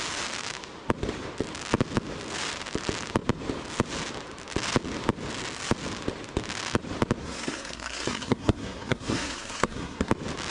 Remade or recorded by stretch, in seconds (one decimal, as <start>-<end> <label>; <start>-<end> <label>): 0.0-7.2 recorded; 7.2-10.1 remade; 10.1-10.5 recorded